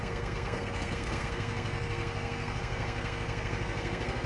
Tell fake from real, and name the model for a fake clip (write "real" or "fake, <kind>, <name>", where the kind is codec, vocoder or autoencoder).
fake, codec, SNAC